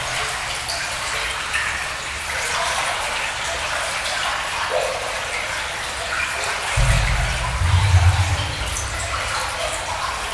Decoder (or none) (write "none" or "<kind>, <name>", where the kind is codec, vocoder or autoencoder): none